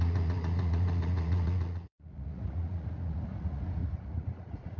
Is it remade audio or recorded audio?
remade